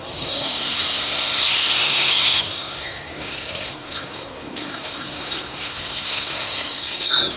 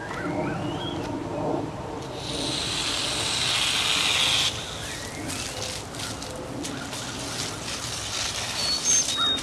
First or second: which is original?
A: second